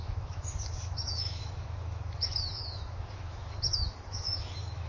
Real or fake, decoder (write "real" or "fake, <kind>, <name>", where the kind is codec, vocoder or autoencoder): fake, autoencoder, DAC-VAE